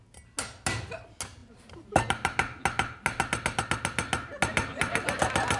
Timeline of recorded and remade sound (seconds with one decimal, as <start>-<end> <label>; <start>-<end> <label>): 0.0-5.6 recorded